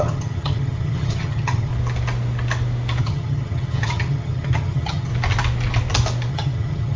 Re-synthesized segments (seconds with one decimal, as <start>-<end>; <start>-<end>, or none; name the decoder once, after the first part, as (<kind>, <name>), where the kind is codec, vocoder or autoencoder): 0.0-1.7 (vocoder, HiFi-GAN); 3.0-5.1; 6.3-7.0